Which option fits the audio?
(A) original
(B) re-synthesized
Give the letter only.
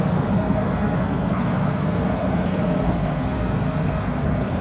B